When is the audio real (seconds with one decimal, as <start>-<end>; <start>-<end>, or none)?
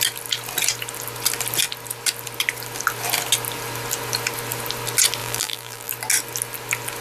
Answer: 0.0-5.2; 5.9-7.0